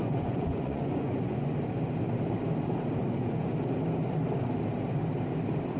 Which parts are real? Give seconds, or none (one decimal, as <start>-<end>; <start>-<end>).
1.5-3.0; 3.5-5.8